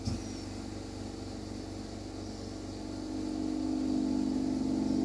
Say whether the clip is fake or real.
real